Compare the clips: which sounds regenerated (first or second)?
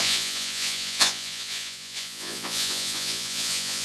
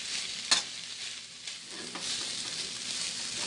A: first